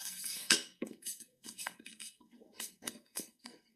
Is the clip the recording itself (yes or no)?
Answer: no